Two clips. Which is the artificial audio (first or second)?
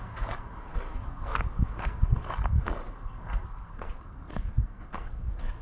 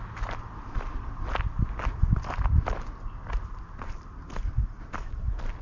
first